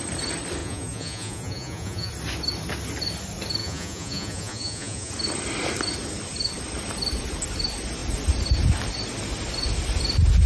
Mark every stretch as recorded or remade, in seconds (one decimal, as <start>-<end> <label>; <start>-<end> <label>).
0.0-0.6 recorded; 0.6-2.1 remade; 2.1-3.6 recorded; 3.6-5.1 remade; 5.1-10.5 recorded